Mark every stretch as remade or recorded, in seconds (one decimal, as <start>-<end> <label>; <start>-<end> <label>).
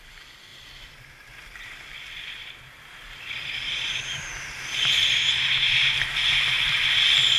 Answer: 0.0-0.5 recorded; 0.5-4.9 remade; 4.9-7.4 recorded